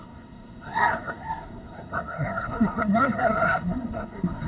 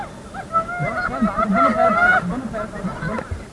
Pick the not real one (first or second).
first